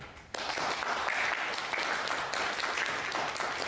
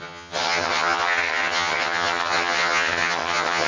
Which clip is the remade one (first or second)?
second